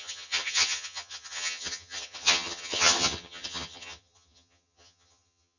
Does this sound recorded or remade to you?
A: remade